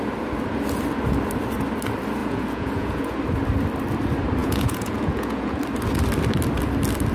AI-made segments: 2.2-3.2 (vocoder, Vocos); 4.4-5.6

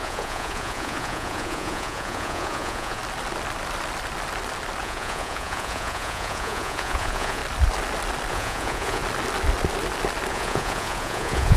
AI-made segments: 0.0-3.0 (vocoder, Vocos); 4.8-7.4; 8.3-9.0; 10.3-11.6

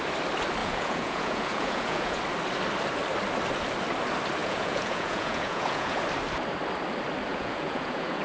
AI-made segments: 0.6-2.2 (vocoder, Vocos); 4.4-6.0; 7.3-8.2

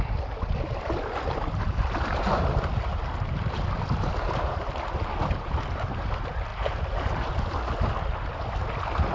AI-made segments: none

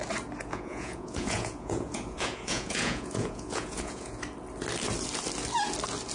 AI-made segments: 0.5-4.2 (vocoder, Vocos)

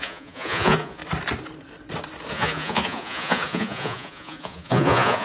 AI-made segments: 0.0-1.0 (vocoder, Vocos); 2.3-5.2